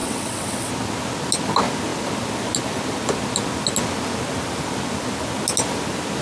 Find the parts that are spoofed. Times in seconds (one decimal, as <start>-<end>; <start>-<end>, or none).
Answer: 0.0-0.7